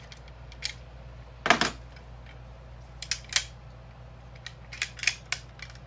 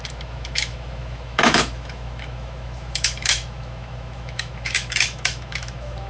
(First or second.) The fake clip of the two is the second